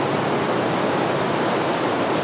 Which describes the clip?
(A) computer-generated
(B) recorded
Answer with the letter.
B